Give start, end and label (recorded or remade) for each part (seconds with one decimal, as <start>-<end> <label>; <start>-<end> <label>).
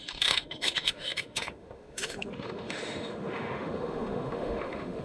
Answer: 0.0-5.0 remade